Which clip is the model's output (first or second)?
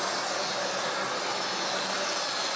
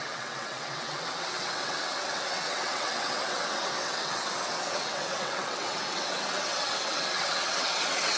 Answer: second